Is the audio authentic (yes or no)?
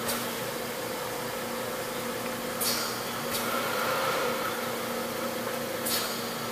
yes